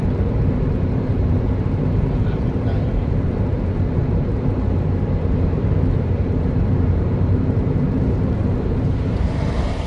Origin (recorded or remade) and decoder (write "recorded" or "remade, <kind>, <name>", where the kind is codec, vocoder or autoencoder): remade, vocoder, BigVGAN v2